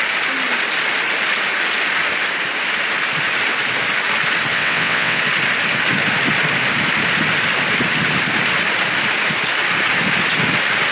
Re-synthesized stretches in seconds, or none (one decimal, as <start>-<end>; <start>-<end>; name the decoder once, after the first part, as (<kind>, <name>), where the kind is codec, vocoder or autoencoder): 4.5-5.2 (vocoder, WaveNeXt)